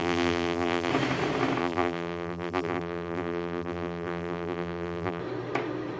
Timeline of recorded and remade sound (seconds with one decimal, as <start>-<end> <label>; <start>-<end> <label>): 0.0-0.9 remade; 0.9-1.6 recorded; 1.6-5.2 remade; 5.2-6.0 recorded

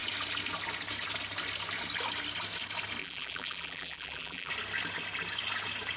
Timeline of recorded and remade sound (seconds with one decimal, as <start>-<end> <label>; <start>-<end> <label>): 0.0-3.0 recorded; 3.0-4.5 remade; 4.5-6.0 recorded

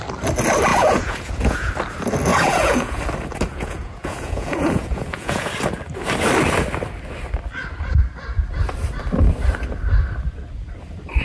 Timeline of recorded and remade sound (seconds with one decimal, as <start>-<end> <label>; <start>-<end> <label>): 0.0-0.7 recorded; 0.7-1.7 remade; 1.7-2.3 recorded; 2.3-3.0 remade; 3.0-3.5 recorded; 3.5-5.5 remade; 5.5-11.2 recorded

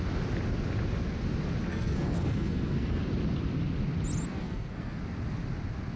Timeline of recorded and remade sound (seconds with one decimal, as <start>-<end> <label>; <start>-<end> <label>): 0.0-1.7 recorded; 1.7-3.0 remade; 3.0-4.3 recorded; 4.3-5.0 remade; 5.0-6.0 recorded

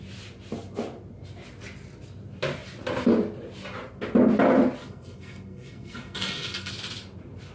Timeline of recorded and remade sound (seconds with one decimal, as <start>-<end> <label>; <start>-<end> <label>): 0.0-4.8 recorded; 4.8-6.7 remade; 6.7-7.5 recorded

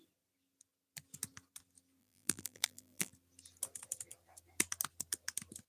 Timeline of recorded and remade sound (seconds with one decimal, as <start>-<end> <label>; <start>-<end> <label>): 0.0-2.0 recorded; 2.0-3.1 remade; 3.1-5.7 recorded

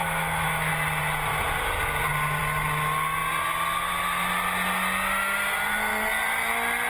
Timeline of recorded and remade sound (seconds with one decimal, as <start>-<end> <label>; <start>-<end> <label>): 0.0-0.7 remade; 0.7-6.9 recorded

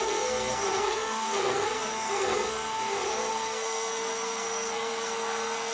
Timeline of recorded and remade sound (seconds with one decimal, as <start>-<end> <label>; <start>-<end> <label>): 0.0-5.7 remade